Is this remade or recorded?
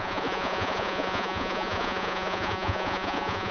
remade